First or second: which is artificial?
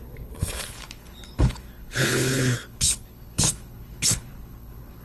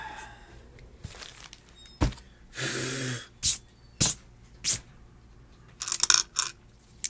first